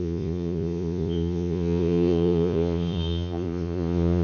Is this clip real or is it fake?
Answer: fake